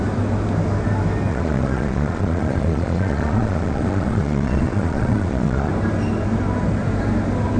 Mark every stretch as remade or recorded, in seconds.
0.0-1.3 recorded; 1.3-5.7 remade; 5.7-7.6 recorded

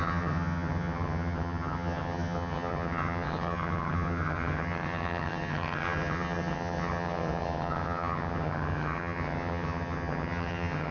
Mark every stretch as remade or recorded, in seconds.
0.0-10.9 remade

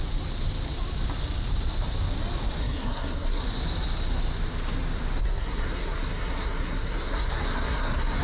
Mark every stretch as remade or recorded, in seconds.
0.0-2.6 recorded; 2.6-3.4 remade; 3.4-5.2 recorded; 5.2-8.2 remade

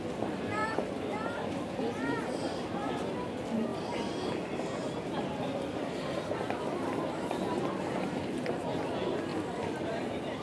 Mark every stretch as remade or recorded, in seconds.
0.0-0.6 recorded; 0.6-2.9 remade; 2.9-3.7 recorded; 3.7-8.9 remade; 8.9-9.3 recorded; 9.3-10.4 remade

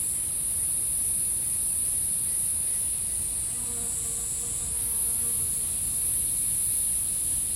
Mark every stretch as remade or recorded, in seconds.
0.0-7.6 recorded

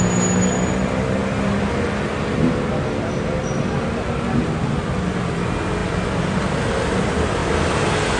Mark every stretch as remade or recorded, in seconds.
0.0-8.2 recorded